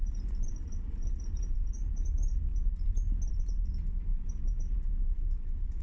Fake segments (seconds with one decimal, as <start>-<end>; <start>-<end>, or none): 0.0-2.5; 3.3-5.8